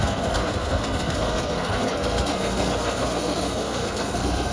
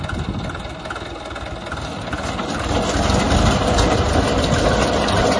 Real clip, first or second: second